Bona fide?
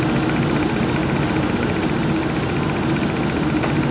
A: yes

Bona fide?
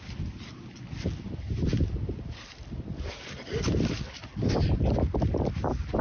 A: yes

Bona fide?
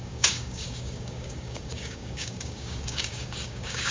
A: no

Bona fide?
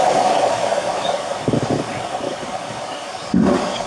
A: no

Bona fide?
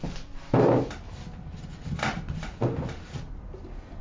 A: yes